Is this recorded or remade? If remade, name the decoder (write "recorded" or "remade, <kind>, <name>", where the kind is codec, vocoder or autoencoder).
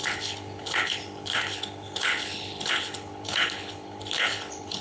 remade, codec, HILCodec